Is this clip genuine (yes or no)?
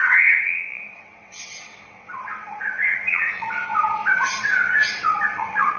no